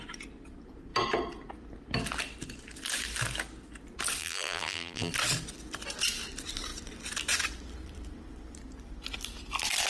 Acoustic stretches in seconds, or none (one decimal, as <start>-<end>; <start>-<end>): 0.0-4.2; 5.1-9.9